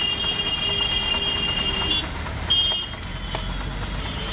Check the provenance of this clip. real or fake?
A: real